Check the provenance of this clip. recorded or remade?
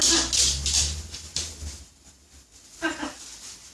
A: recorded